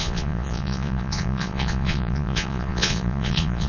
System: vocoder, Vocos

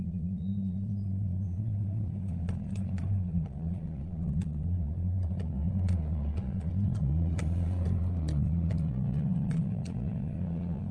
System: vocoder, Vocos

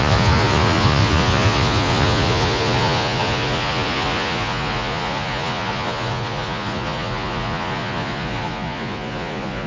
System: vocoder, Vocos